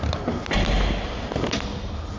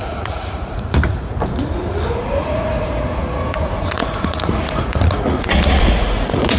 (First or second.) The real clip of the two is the first